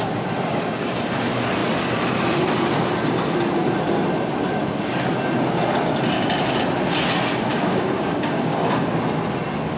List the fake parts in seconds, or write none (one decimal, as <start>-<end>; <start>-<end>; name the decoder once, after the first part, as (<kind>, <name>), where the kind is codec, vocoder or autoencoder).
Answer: 7.5-8.9 (codec, DAC)

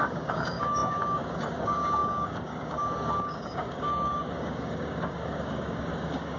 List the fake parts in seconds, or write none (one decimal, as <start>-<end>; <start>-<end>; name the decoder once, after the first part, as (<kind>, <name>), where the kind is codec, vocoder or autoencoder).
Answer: 0.0-6.4 (codec, DAC)

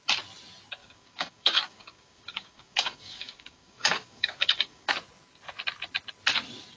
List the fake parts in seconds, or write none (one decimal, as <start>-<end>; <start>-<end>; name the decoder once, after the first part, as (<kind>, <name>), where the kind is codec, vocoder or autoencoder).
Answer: 0.8-4.9 (codec, DAC)